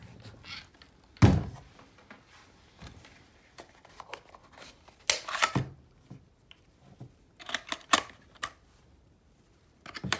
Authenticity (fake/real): real